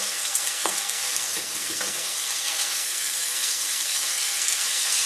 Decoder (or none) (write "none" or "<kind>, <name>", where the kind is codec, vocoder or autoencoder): codec, SNAC